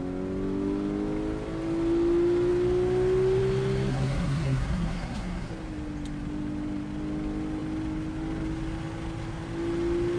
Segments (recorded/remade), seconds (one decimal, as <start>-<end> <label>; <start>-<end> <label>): 0.0-3.9 recorded; 3.9-5.5 remade; 5.5-10.2 recorded